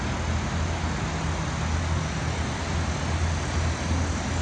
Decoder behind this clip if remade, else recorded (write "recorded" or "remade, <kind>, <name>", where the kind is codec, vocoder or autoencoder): recorded